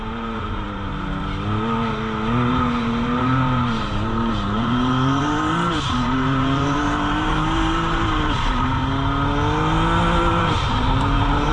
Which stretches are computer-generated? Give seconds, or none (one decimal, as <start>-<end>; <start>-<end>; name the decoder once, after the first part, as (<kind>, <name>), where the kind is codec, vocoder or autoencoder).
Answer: 0.0-0.9 (vocoder, BigVGAN v2); 2.5-8.8; 10.4-11.5